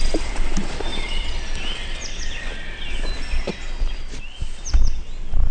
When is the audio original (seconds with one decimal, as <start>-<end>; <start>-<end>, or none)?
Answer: 0.0-0.9; 1.4-5.5